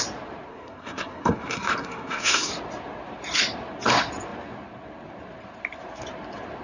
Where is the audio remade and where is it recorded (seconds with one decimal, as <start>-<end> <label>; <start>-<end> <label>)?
0.0-0.5 recorded; 0.5-2.5 remade; 2.5-6.6 recorded